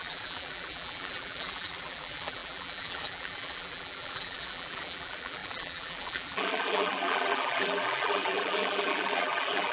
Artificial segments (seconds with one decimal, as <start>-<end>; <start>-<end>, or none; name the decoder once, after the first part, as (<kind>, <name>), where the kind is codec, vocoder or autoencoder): 0.0-9.7 (vocoder, BigVGAN v2)